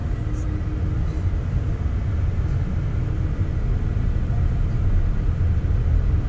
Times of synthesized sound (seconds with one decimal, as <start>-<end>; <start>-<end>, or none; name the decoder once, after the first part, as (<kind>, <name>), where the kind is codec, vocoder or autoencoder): none